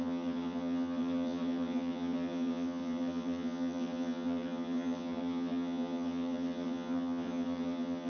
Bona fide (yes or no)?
no